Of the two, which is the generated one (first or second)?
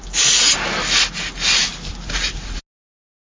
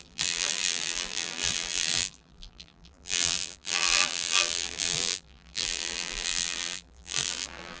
second